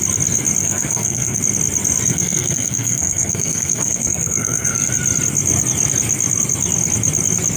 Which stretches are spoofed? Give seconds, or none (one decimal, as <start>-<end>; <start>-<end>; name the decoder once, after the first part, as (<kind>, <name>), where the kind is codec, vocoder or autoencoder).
0.6-1.4 (codec, SNAC); 2.1-4.9

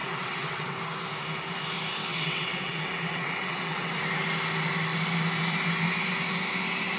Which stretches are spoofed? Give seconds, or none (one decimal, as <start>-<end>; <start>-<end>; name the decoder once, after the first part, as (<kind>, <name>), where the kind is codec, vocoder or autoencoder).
0.0-0.7 (vocoder, WaveNeXt); 2.1-3.9

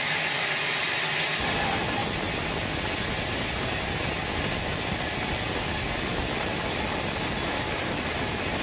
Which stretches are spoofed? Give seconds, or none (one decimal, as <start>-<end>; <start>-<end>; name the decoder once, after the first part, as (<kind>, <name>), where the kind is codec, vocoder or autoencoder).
none

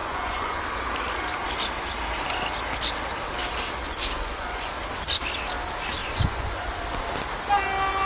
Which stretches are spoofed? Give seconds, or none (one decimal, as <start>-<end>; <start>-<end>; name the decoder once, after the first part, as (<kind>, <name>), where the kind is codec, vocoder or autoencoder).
0.0-0.6 (vocoder, Vocos); 3.8-4.7; 6.0-6.7